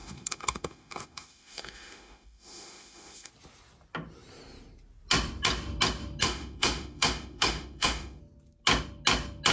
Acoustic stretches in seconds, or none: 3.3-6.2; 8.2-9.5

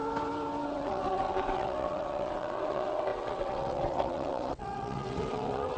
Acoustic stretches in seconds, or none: 0.0-0.7

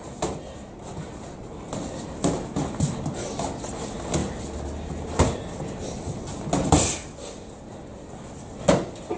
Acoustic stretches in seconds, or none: 0.0-9.2